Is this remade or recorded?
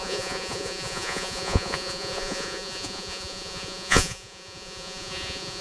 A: remade